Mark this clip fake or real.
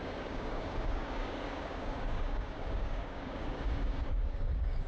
fake